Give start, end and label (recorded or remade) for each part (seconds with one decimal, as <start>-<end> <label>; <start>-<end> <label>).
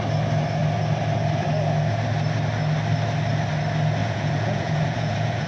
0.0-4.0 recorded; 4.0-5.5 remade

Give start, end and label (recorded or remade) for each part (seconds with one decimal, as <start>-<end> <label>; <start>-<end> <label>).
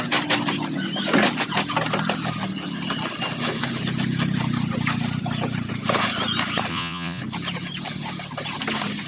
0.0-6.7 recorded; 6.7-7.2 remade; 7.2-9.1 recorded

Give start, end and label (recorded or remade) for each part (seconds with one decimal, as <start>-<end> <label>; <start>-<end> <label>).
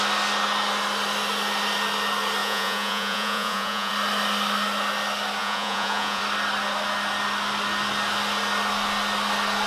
0.0-2.4 recorded; 2.4-3.9 remade; 3.9-5.4 recorded; 5.4-6.2 remade; 6.2-9.7 recorded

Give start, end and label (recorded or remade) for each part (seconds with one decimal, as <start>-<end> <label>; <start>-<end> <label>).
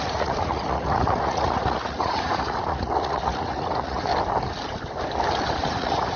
0.0-4.1 remade; 4.1-5.7 recorded; 5.7-6.2 remade